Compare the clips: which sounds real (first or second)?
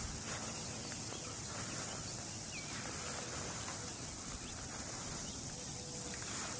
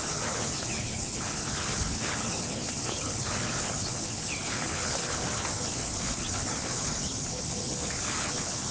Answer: first